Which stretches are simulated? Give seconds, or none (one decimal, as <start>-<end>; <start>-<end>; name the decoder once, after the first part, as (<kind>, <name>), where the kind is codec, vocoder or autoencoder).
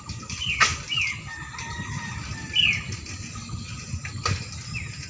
none